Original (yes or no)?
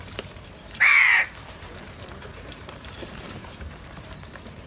no